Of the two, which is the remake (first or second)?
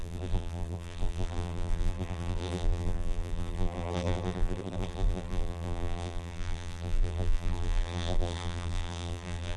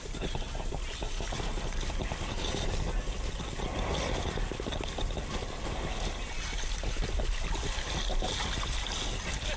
first